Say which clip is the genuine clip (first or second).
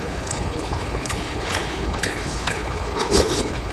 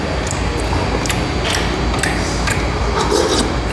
second